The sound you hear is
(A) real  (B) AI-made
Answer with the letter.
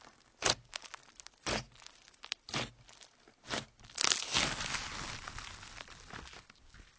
A